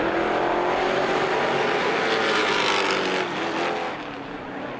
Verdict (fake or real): real